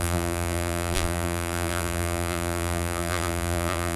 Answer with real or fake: fake